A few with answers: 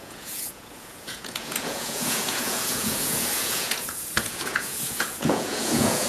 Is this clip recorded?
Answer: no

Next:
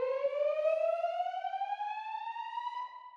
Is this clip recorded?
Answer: yes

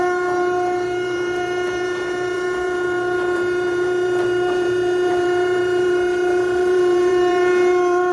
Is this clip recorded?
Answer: no